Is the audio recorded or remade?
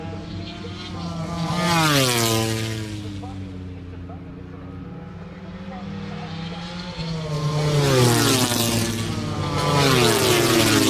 recorded